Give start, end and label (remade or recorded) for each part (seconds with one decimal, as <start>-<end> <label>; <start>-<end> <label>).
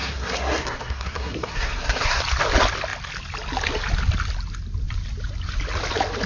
0.0-2.2 remade; 2.2-6.3 recorded